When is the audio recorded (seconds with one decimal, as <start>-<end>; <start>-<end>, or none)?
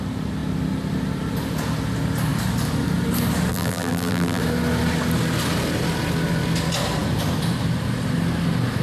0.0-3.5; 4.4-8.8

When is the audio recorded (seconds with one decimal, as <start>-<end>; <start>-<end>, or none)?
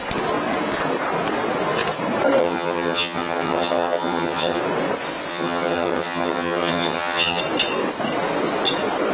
0.0-2.4; 4.6-5.3; 7.4-9.1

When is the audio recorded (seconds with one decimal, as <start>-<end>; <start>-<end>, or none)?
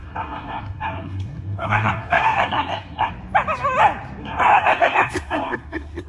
3.1-4.2